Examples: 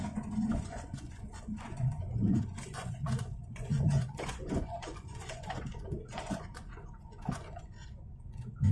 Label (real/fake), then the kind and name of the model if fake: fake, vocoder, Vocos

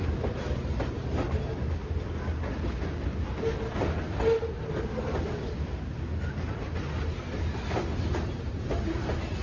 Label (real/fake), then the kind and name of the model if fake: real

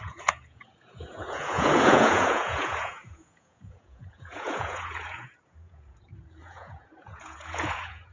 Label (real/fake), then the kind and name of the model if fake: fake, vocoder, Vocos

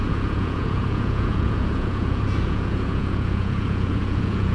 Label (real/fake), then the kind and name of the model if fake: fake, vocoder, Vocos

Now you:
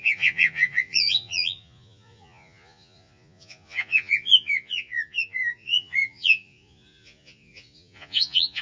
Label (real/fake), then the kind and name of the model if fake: fake, vocoder, Vocos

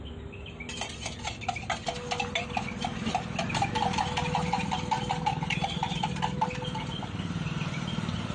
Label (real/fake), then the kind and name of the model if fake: real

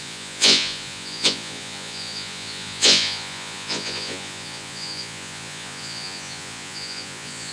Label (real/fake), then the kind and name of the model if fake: fake, vocoder, Vocos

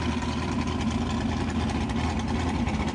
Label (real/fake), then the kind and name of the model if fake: real